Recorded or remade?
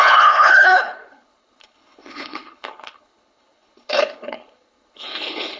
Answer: remade